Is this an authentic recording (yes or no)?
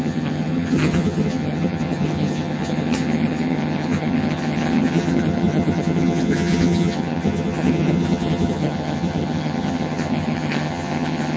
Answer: no